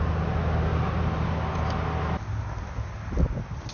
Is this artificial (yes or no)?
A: no